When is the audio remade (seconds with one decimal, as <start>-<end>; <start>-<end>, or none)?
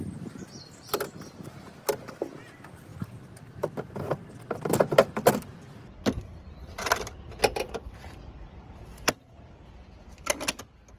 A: 2.9-4.3; 5.0-9.1